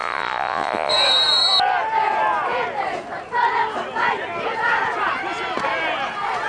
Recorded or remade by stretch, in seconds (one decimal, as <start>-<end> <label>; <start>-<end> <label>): 0.0-0.9 remade; 0.9-6.5 recorded